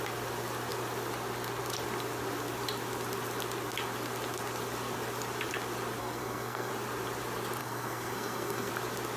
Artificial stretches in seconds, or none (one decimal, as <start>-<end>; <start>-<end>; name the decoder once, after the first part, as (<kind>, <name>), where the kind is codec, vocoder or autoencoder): 6.0-6.7 (codec, SNAC); 7.6-8.7